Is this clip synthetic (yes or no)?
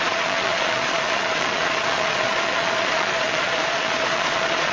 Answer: yes